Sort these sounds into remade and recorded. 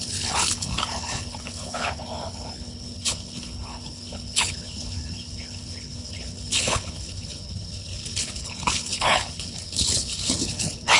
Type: remade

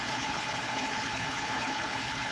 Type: remade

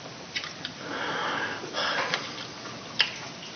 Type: recorded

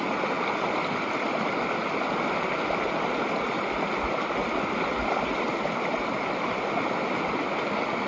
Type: recorded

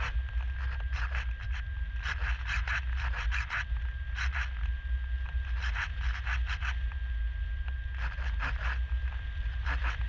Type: recorded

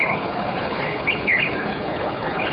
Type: remade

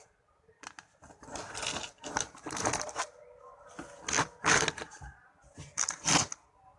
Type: recorded